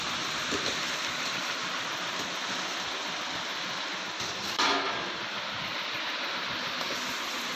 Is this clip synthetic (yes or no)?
no